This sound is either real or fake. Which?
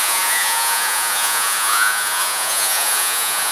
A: fake